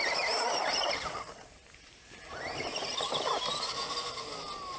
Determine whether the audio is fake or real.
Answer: real